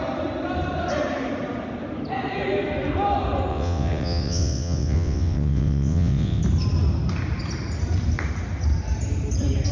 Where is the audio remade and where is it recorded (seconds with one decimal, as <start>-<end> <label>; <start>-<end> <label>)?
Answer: 0.0-3.5 recorded; 3.5-6.4 remade; 6.4-9.7 recorded